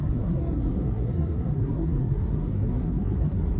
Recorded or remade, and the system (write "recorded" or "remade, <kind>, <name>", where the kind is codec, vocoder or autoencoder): remade, codec, SNAC